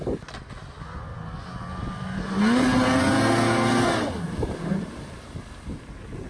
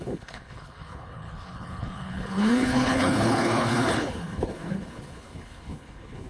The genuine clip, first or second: first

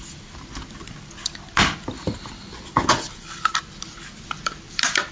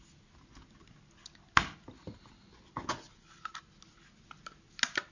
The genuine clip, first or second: second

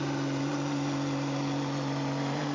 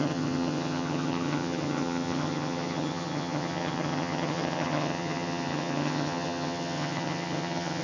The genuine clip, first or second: first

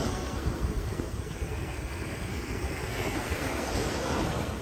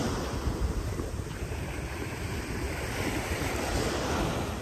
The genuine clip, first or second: second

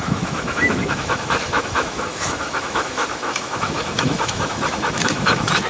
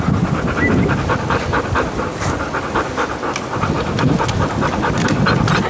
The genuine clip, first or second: second